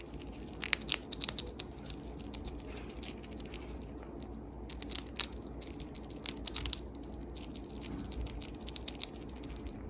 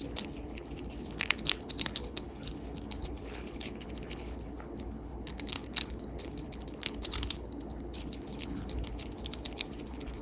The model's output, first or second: second